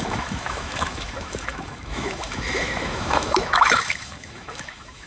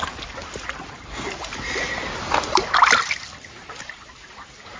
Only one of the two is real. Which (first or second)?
second